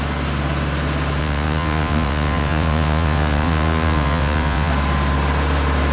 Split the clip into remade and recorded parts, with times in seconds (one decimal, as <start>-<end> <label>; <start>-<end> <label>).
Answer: 0.0-1.2 recorded; 1.2-4.7 remade; 4.7-5.9 recorded